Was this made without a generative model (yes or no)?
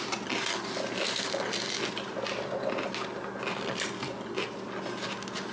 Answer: yes